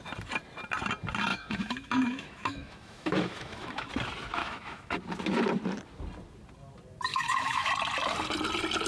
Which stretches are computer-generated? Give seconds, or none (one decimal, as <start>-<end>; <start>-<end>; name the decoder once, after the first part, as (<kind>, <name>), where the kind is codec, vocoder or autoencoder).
1.3-3.9 (autoencoder, DAC-VAE); 4.4-5.0; 7.1-7.7